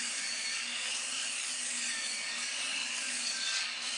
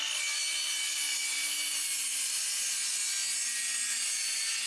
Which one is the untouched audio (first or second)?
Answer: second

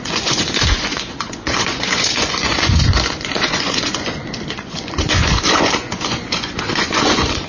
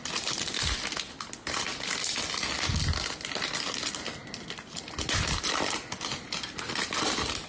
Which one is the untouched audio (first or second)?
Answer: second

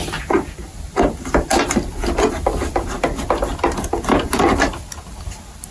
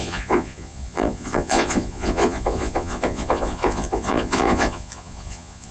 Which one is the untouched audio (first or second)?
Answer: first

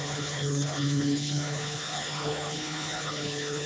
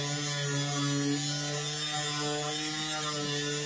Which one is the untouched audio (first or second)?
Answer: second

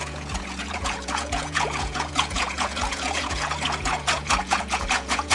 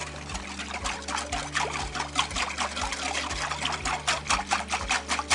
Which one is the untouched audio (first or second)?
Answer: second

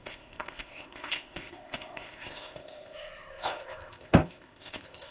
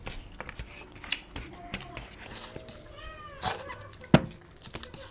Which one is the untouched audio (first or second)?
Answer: second